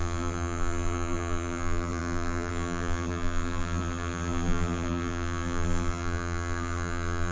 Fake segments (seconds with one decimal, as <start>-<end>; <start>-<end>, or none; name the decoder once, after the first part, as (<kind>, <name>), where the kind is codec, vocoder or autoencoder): 0.0-7.3 (vocoder, BigVGAN v2)